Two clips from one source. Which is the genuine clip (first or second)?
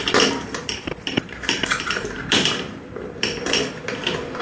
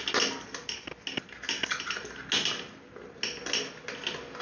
second